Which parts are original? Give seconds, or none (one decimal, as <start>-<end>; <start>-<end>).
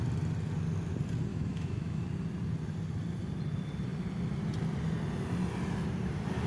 0.0-1.3; 2.0-6.5